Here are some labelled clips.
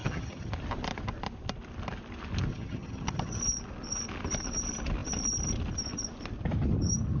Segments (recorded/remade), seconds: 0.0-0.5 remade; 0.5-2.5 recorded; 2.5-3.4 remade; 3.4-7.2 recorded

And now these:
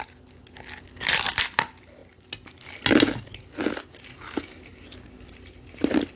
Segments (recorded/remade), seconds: 0.0-6.2 recorded